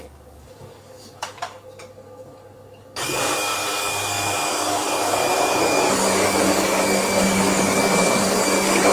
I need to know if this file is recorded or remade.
remade